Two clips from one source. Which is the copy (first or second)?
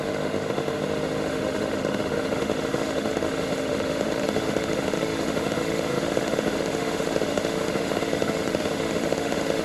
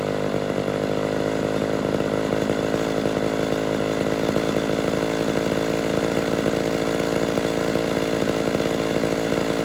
first